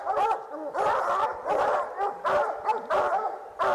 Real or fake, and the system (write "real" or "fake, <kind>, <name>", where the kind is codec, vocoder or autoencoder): real